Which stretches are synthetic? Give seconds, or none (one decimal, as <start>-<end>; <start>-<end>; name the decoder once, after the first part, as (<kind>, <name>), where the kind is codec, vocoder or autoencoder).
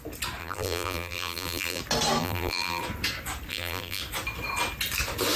0.4-1.8 (vocoder, BigVGAN v2); 2.2-2.8; 3.5-4.0